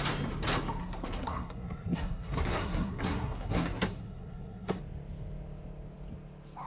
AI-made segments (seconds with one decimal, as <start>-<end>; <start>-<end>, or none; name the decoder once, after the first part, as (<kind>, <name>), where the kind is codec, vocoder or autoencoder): 0.8-4.8 (codec, SNAC)